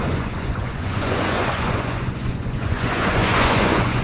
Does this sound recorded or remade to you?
remade